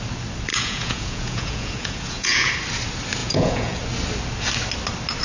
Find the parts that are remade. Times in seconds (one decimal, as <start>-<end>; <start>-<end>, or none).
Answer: 0.5-2.5; 3.2-3.8